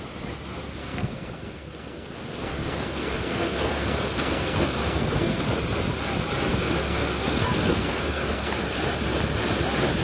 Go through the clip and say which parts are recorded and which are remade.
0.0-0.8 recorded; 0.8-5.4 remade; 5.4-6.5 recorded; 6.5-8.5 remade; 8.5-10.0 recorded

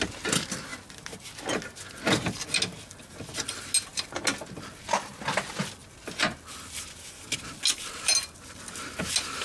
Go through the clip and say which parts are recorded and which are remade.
0.0-9.4 recorded